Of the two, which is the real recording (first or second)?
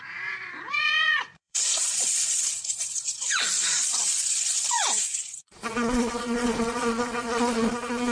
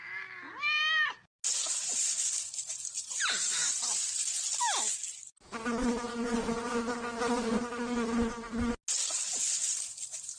second